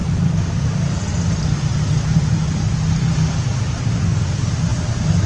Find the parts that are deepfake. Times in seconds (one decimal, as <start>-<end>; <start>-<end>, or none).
0.0-1.2; 1.7-2.4; 4.7-5.3